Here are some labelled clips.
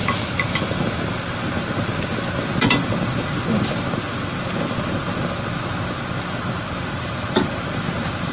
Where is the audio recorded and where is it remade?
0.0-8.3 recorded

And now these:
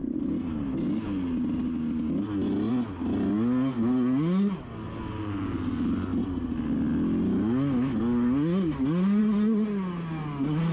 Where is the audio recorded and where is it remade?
0.0-10.7 recorded

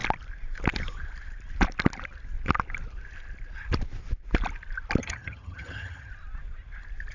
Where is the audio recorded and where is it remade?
0.0-5.0 recorded; 5.0-6.1 remade; 6.1-7.1 recorded